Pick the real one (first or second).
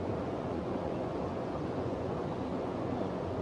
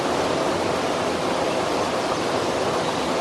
second